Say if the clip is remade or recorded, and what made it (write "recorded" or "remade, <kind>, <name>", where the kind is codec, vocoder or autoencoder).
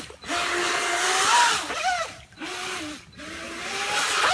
recorded